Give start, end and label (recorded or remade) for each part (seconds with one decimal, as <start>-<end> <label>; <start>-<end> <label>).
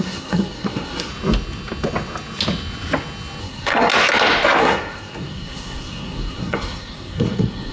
0.0-1.1 remade; 1.1-3.4 recorded; 3.4-3.9 remade; 3.9-4.6 recorded; 4.6-7.7 remade